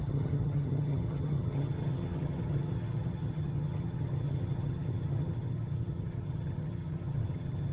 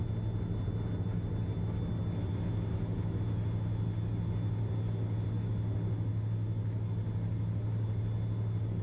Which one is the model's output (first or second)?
first